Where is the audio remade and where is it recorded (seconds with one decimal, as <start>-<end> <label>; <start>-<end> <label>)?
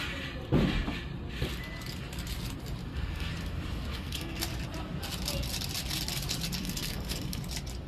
0.0-2.8 recorded; 2.8-3.3 remade; 3.3-3.9 recorded; 3.9-4.4 remade; 4.4-6.6 recorded; 6.6-7.4 remade; 7.4-7.9 recorded